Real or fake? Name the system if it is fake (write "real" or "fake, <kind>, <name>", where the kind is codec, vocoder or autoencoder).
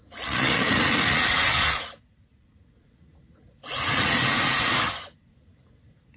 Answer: fake, vocoder, Vocos